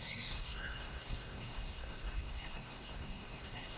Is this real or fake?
fake